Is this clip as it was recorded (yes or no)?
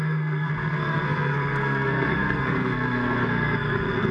no